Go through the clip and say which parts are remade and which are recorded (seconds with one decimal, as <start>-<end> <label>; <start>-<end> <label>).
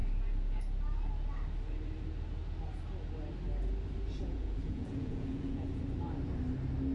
0.0-4.2 recorded; 4.2-5.8 remade; 5.8-6.9 recorded